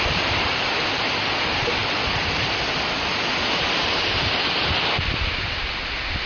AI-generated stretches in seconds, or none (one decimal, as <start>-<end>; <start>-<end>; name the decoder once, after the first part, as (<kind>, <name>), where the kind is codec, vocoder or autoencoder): none